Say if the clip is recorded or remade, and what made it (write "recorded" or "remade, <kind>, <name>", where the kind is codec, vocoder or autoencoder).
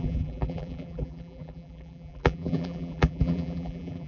remade, vocoder, BigVGAN v2